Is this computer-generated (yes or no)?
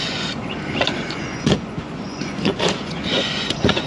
yes